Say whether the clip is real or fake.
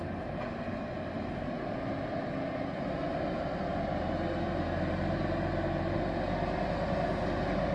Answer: real